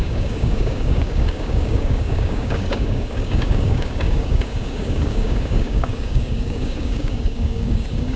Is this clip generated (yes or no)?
yes